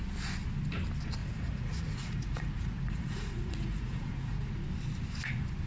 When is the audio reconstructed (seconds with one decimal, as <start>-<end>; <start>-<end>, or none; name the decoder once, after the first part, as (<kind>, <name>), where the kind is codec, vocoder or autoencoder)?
1.2-4.6 (vocoder, Vocos)